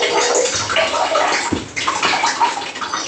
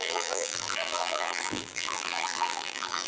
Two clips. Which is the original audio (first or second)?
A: first